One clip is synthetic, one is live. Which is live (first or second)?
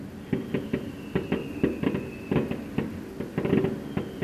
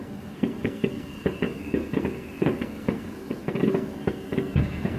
first